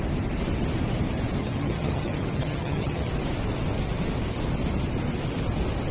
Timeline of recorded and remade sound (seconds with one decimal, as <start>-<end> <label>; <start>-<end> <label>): 0.0-1.4 recorded; 1.4-3.1 remade; 3.1-5.9 recorded